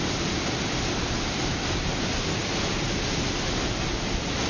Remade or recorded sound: recorded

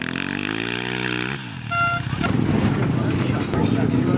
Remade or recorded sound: recorded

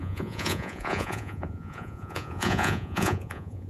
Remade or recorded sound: remade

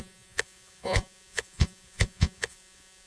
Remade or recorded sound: remade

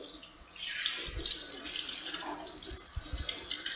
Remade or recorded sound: recorded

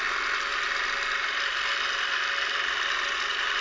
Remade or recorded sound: recorded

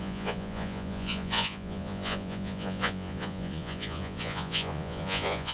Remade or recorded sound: remade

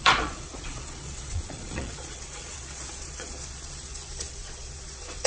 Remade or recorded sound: remade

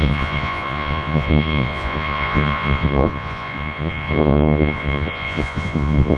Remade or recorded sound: remade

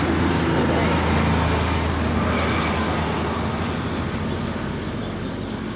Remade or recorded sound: recorded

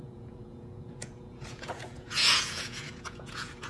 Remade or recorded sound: remade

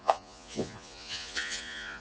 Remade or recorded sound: remade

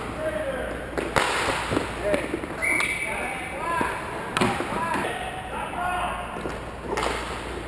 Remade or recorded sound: recorded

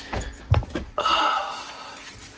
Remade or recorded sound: recorded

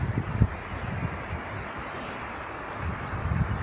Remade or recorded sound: recorded